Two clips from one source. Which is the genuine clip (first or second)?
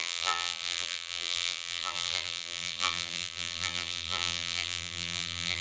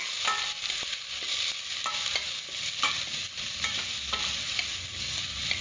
second